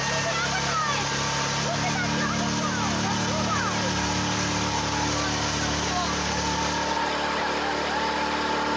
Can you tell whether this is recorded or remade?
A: recorded